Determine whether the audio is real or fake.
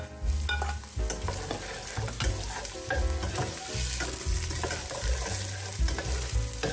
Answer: real